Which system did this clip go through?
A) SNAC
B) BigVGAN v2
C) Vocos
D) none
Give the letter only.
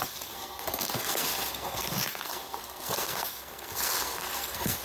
A